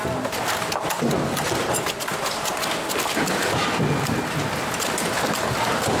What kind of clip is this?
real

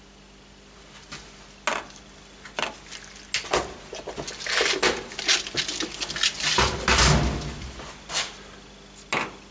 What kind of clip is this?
real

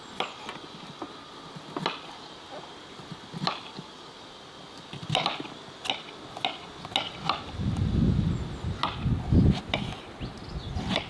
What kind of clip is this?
real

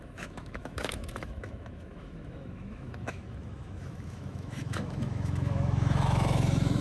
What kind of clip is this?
fake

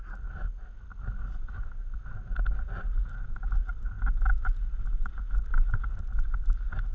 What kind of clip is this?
real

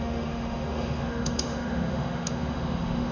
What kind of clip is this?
fake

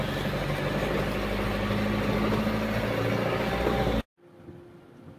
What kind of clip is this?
real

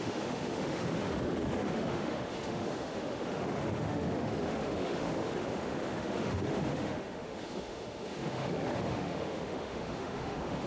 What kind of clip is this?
fake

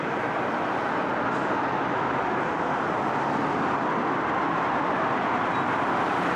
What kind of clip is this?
real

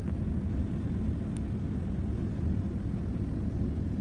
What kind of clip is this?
real